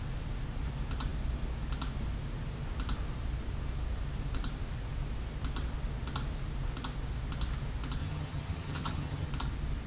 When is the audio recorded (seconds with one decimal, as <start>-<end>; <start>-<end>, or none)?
0.0-8.0; 9.3-9.9

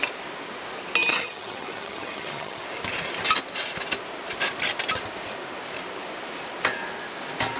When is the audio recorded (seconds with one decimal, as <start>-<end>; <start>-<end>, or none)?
0.0-1.1; 2.6-7.6

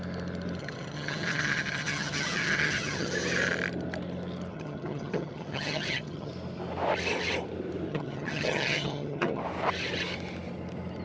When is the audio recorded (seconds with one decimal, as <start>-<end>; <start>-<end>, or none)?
0.0-0.6; 3.1-4.5; 6.3-7.9; 9.4-11.0